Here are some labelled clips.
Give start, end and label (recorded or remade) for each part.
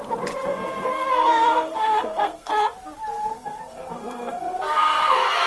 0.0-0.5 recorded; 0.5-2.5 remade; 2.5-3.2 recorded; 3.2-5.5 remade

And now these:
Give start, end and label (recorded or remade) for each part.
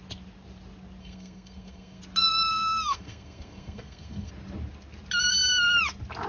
0.0-1.0 recorded; 1.0-2.0 remade; 2.0-2.5 recorded; 2.5-4.3 remade; 4.3-6.3 recorded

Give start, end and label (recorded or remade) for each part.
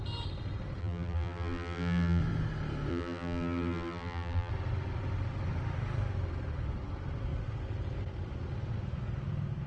0.0-0.8 recorded; 0.8-2.2 remade; 2.2-2.9 recorded; 2.9-4.5 remade; 4.5-9.7 recorded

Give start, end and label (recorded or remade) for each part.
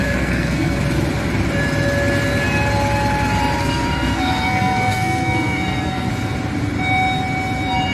0.0-0.8 remade; 0.8-3.6 recorded; 3.6-6.1 remade; 6.1-7.9 recorded